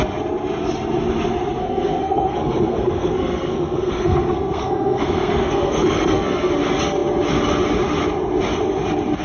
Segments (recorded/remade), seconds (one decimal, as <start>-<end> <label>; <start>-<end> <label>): 0.0-1.6 recorded; 1.6-6.5 remade; 6.5-9.2 recorded

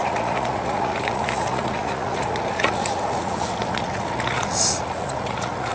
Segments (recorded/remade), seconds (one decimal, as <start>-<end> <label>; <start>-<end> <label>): 0.0-5.7 remade

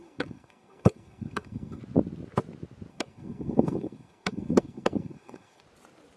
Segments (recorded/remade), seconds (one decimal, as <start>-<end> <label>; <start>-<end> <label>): 0.0-1.8 remade; 1.8-2.9 recorded; 2.9-5.6 remade; 5.6-6.2 recorded

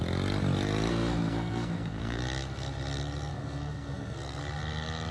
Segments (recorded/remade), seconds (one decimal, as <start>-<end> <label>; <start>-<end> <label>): 0.0-0.9 recorded; 0.9-2.2 remade; 2.2-3.3 recorded; 3.3-4.4 remade; 4.4-5.1 recorded

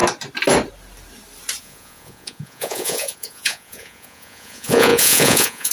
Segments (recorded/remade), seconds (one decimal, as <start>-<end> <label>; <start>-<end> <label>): 0.0-1.6 recorded; 1.6-5.7 remade